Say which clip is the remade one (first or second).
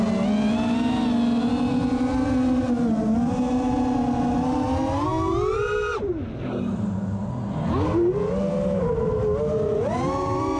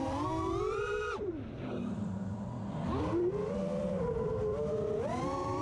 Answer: second